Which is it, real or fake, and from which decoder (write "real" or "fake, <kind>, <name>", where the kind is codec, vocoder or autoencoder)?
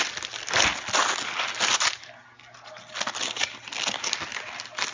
real